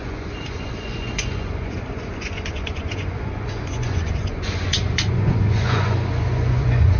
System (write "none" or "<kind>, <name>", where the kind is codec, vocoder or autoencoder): vocoder, Vocos